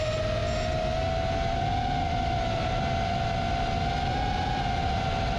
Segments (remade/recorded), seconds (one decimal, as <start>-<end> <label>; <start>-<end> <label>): 0.0-5.4 recorded